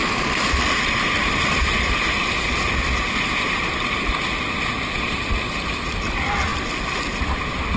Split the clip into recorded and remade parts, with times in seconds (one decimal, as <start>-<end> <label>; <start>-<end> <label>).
0.0-7.8 recorded